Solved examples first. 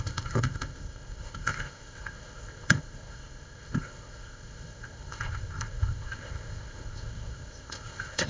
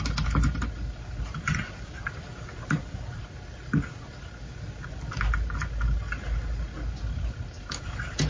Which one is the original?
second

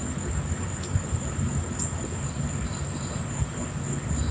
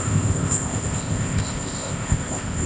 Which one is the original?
first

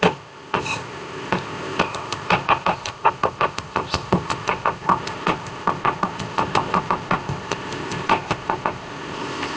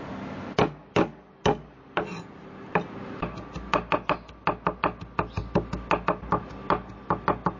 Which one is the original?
second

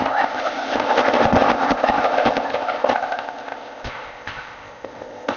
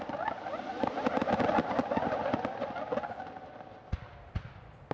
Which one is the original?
second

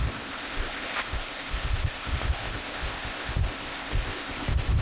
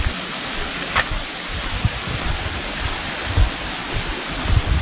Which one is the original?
second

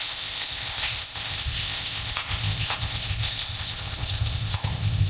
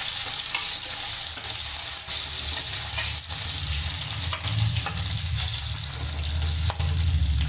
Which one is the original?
second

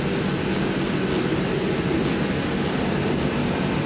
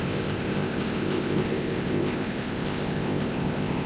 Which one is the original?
first